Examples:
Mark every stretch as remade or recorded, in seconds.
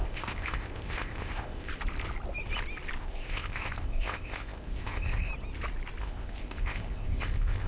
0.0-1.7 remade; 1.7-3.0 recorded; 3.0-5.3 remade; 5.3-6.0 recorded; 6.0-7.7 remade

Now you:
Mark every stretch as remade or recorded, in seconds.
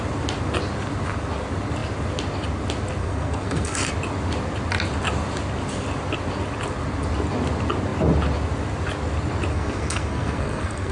0.0-3.0 recorded; 3.0-3.9 remade; 3.9-9.5 recorded; 9.5-10.9 remade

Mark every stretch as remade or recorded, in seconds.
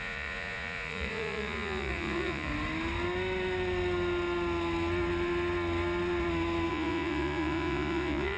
0.0-2.5 remade; 2.5-6.7 recorded; 6.7-8.4 remade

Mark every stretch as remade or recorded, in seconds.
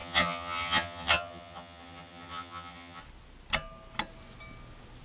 0.0-3.0 remade; 3.0-5.0 recorded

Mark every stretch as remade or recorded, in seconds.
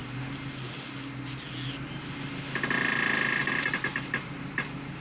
0.0-3.4 recorded; 3.4-5.0 remade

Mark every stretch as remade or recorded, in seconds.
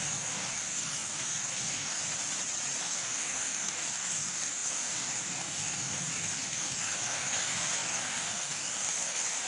0.0-2.0 remade; 2.0-2.8 recorded; 2.8-9.5 remade